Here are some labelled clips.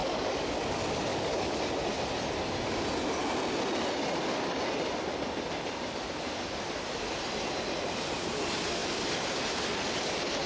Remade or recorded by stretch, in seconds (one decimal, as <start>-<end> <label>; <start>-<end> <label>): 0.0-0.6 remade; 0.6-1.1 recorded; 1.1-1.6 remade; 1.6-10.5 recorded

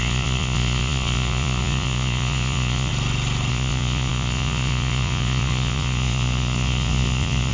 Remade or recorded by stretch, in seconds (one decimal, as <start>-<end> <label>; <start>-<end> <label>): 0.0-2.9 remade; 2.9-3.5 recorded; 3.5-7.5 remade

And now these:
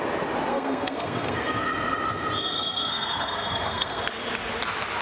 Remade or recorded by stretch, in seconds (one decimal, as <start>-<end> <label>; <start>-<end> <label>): 0.0-0.5 recorded; 0.5-1.6 remade; 1.6-2.5 recorded; 2.5-4.0 remade; 4.0-5.0 recorded

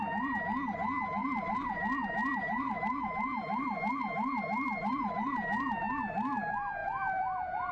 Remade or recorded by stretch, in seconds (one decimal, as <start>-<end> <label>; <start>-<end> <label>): 0.0-1.2 recorded; 1.2-5.8 remade; 5.8-6.8 recorded; 6.8-7.7 remade

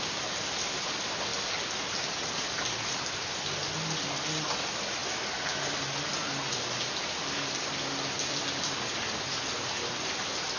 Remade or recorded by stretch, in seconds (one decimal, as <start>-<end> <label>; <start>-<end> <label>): 0.0-10.6 recorded

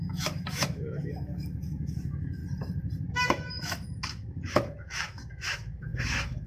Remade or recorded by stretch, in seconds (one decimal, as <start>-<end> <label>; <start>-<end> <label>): 0.0-2.4 remade; 2.4-3.1 recorded; 3.1-6.5 remade

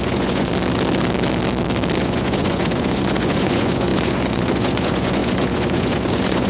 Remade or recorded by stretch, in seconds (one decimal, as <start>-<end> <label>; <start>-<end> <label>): 0.0-0.5 remade; 0.5-2.0 recorded; 2.0-6.5 remade